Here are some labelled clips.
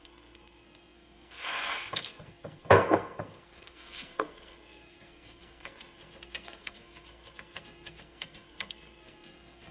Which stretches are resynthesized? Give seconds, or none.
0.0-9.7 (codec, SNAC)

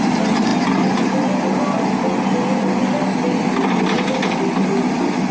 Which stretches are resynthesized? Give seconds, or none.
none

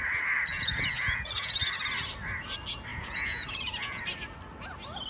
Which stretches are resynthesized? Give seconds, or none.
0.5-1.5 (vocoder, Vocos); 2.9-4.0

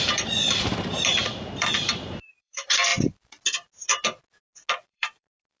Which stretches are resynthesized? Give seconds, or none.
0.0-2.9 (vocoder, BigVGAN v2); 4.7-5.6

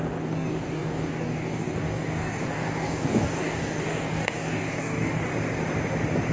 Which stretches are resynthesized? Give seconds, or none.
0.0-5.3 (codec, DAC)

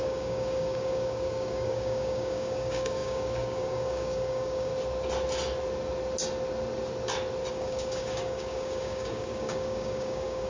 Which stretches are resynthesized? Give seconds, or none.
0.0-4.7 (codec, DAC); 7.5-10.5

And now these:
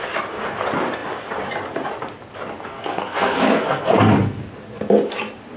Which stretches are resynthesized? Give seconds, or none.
2.7-4.4 (codec, SNAC)